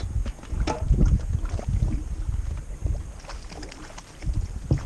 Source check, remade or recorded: recorded